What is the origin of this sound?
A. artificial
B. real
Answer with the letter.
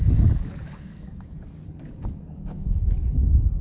A